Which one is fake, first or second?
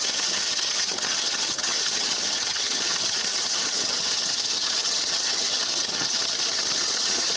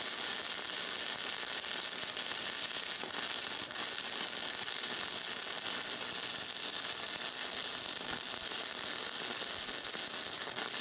first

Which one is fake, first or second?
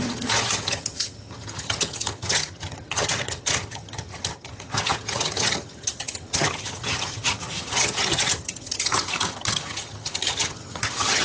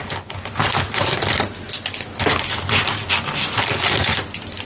first